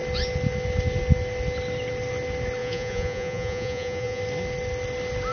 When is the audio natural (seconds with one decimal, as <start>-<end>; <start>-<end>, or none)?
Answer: 0.0-2.6; 4.2-5.3